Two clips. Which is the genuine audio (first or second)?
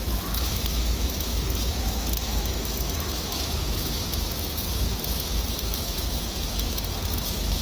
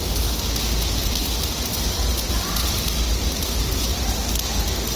second